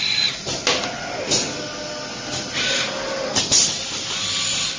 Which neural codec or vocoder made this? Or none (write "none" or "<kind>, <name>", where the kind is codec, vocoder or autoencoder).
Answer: none